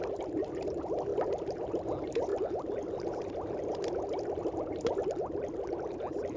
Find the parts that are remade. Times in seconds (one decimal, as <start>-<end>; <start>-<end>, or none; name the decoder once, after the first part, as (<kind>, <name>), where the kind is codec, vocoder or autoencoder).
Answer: none

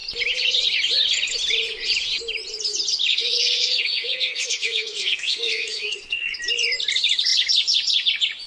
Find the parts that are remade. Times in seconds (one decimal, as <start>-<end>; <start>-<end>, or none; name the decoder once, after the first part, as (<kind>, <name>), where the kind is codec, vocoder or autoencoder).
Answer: 3.1-6.4 (codec, SNAC)

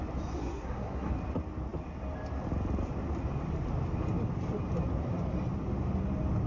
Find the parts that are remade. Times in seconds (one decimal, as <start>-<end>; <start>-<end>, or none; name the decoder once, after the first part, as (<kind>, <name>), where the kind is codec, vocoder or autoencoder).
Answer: 0.4-1.1 (codec, SNAC)

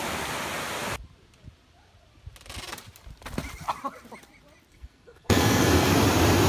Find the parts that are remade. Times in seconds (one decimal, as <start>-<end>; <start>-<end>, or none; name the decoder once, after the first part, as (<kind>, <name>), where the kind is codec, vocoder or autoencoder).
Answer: 4.7-5.9 (codec, SNAC)

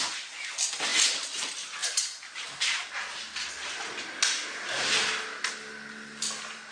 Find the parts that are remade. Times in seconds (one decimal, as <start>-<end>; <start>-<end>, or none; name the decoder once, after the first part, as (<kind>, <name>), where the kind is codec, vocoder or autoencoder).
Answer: none

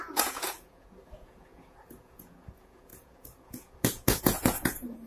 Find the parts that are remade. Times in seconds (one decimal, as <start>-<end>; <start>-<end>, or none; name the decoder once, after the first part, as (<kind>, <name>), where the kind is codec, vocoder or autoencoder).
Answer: 0.0-5.1 (vocoder, Vocos)

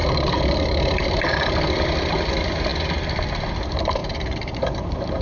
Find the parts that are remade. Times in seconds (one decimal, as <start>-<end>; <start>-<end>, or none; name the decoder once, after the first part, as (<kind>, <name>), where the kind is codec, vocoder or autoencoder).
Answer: 0.0-1.2 (vocoder, BigVGAN v2); 4.0-5.2